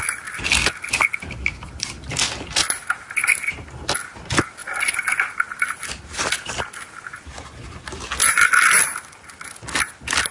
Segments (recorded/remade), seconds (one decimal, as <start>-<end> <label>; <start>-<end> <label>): 0.0-10.3 recorded